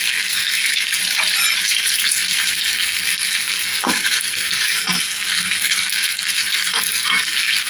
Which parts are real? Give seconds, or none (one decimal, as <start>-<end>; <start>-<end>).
1.0-1.6